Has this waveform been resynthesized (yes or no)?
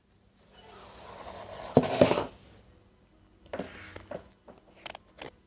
no